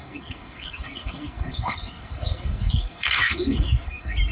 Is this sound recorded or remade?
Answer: remade